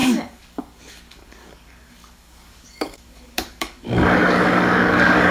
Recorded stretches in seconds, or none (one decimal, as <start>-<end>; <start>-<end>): none